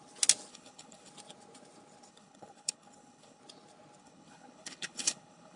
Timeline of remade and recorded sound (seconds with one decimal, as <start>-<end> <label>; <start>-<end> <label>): 0.0-0.5 recorded; 0.5-1.1 remade; 1.1-2.1 recorded; 2.1-3.4 remade; 3.4-4.0 recorded; 4.0-5.6 remade